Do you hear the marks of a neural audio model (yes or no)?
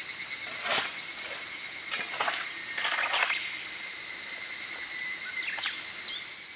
no